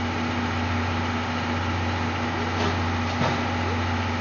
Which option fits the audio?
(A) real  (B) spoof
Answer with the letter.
A